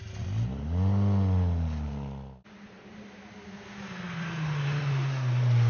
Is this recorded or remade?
recorded